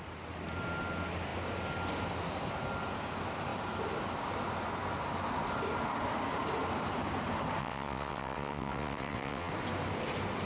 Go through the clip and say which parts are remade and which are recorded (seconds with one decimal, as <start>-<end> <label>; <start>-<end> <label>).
0.0-7.6 recorded; 7.6-9.5 remade; 9.5-10.5 recorded